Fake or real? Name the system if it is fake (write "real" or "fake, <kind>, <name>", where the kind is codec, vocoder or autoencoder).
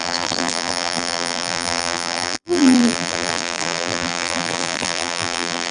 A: fake, vocoder, BigVGAN v2